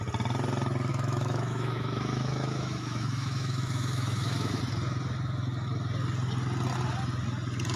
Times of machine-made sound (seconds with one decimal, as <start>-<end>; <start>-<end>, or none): 0.9-4.6